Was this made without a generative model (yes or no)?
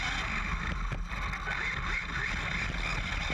yes